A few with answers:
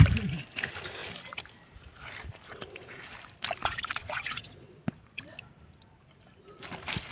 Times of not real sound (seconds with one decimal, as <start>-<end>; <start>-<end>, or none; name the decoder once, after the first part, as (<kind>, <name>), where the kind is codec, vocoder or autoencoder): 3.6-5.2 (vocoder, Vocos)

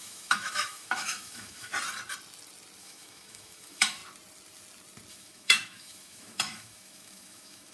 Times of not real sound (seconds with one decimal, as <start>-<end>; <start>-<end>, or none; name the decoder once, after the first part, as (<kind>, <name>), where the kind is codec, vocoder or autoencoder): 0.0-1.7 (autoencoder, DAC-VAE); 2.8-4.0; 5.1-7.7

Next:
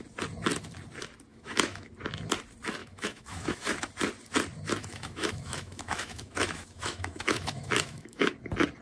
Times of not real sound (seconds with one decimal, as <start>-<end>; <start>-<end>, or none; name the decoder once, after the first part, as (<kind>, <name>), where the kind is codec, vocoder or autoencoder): 1.3-1.9 (autoencoder, DAC-VAE); 2.8-3.9; 4.8-8.3